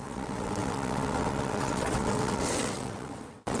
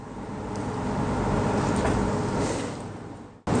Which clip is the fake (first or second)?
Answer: first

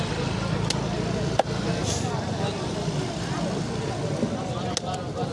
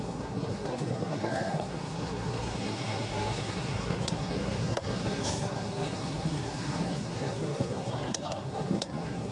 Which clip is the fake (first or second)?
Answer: second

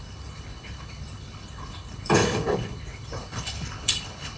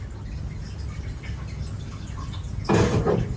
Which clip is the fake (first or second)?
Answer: first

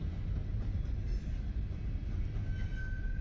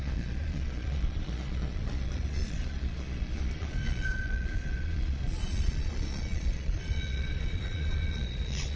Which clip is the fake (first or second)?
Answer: second